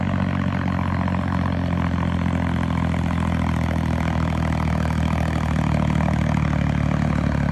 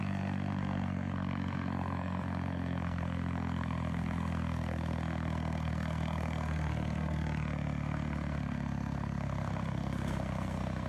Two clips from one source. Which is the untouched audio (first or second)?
first